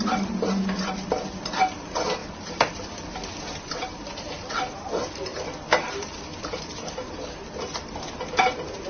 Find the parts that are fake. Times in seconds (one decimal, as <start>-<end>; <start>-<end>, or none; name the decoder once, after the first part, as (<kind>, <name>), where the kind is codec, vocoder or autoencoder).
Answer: 2.2-3.1 (vocoder, BigVGAN v2); 5.3-7.6